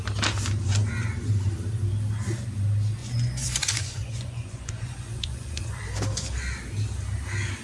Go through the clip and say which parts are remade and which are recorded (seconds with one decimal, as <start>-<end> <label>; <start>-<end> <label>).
0.0-3.0 recorded; 3.0-5.8 remade; 5.8-7.6 recorded